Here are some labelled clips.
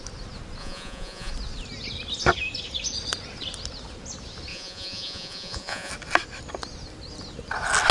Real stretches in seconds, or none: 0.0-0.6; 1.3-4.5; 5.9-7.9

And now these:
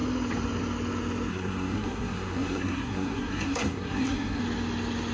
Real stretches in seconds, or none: 0.0-1.3; 4.4-5.1